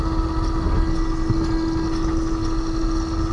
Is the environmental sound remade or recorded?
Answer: recorded